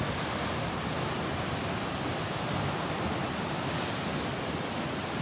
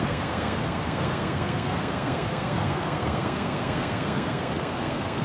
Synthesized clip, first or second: second